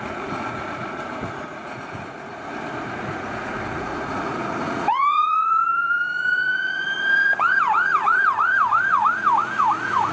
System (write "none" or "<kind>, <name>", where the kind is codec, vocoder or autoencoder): vocoder, Vocos